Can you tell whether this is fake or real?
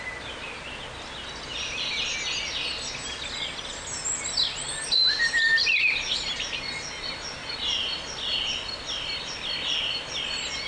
real